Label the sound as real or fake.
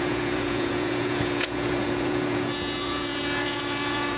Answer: fake